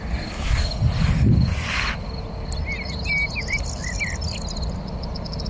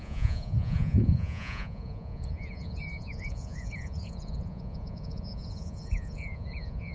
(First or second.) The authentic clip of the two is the first